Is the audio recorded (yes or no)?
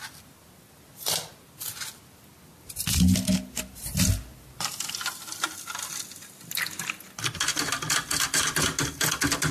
yes